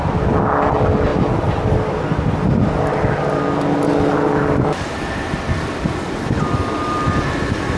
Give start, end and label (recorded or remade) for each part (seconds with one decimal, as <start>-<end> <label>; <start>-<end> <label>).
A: 0.0-7.8 recorded